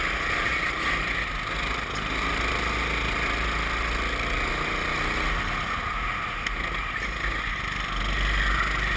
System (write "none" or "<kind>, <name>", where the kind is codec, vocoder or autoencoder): none